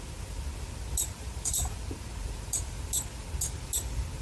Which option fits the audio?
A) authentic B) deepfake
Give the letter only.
A